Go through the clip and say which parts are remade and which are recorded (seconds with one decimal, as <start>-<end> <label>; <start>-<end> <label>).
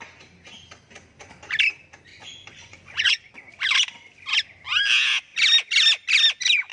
0.0-2.1 recorded; 2.1-3.3 remade; 3.3-6.7 recorded